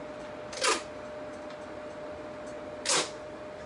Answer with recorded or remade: recorded